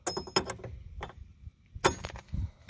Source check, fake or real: real